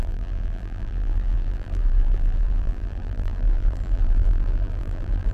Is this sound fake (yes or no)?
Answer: yes